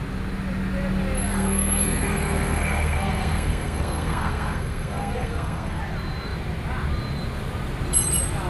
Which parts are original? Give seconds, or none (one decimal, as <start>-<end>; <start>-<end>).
0.0-1.3; 5.8-8.5